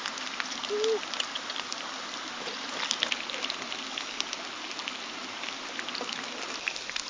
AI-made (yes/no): no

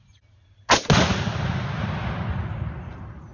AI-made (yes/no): no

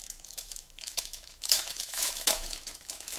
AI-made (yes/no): yes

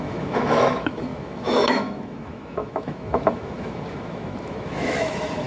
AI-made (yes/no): yes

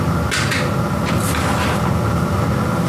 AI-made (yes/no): no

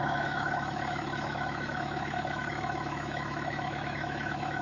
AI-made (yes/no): yes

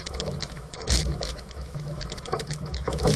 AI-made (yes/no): yes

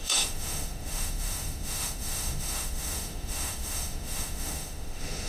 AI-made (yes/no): yes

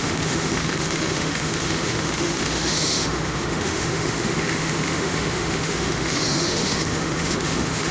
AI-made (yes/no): yes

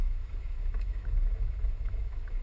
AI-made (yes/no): yes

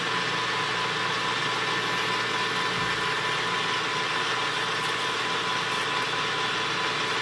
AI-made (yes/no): no